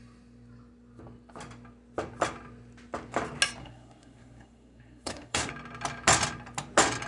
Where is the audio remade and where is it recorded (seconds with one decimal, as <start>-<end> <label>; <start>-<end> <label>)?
0.0-3.6 recorded; 3.6-5.5 remade; 5.5-7.1 recorded